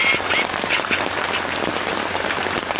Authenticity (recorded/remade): recorded